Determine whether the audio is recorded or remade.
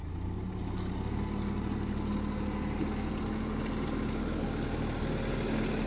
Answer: recorded